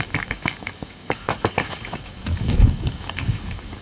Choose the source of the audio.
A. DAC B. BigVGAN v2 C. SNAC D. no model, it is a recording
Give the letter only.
A